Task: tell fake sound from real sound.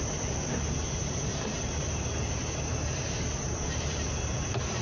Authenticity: fake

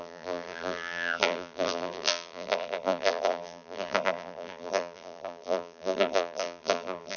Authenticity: fake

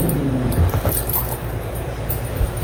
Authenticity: fake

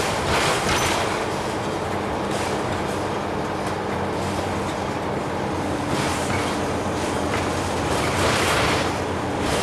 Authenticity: real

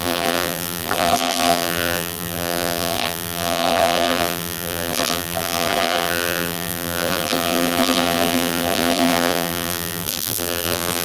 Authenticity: fake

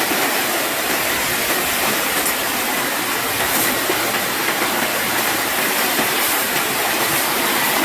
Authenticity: fake